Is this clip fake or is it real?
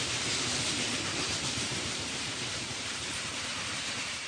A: fake